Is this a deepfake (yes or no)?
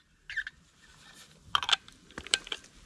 no